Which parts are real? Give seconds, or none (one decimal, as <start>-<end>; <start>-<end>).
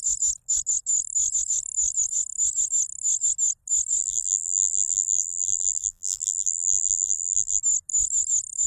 0.0-4.0; 7.6-8.7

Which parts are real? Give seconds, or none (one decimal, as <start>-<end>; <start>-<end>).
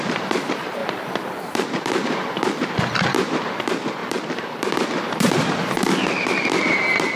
5.9-6.5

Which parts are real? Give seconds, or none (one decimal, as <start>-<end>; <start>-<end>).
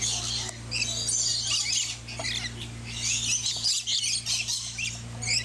0.0-5.4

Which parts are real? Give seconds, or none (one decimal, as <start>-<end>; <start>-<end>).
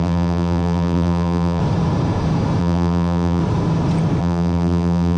1.6-2.6; 3.4-4.2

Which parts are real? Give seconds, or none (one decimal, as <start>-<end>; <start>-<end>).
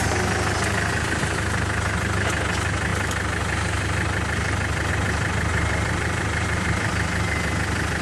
0.0-5.5; 6.9-8.0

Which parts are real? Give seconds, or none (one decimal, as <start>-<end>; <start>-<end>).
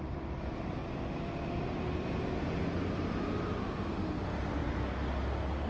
0.0-5.7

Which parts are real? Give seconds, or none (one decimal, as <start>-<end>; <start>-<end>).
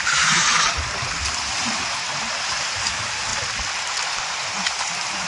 3.3-4.2